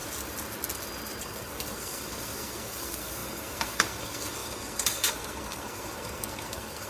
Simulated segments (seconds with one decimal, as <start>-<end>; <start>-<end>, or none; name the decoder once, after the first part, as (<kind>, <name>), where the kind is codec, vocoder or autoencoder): 1.2-6.9 (codec, SNAC)

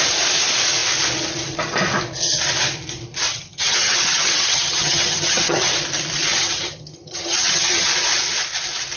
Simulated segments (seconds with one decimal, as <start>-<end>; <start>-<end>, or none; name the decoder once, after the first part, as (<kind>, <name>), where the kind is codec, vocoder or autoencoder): 3.3-5.7 (vocoder, HiFi-GAN); 6.3-7.9

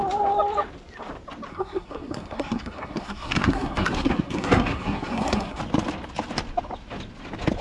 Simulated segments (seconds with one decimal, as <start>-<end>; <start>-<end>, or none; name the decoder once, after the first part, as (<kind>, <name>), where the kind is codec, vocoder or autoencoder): 1.5-5.6 (codec, SNAC)

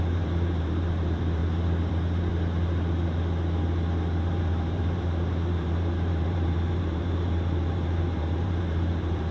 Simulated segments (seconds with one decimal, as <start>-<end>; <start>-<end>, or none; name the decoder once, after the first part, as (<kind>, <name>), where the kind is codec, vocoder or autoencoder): 0.0-1.4 (vocoder, BigVGAN v2); 1.9-2.3; 4.3-9.3